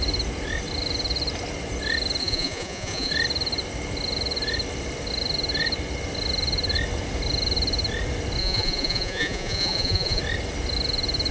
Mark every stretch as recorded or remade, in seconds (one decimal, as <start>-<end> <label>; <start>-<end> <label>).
0.0-2.2 recorded; 2.2-3.1 remade; 3.1-8.4 recorded; 8.4-10.2 remade; 10.2-11.3 recorded